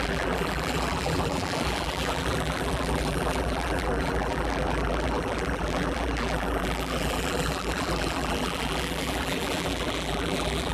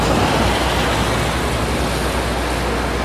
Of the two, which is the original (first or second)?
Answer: second